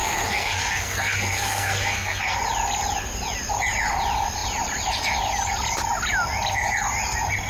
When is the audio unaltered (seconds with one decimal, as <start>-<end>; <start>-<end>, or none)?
2.4-7.5